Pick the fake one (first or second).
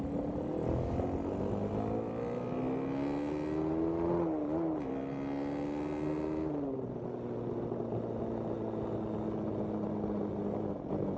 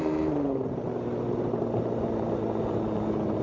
second